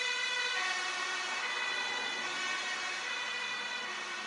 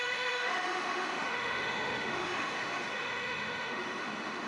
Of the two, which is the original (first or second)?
first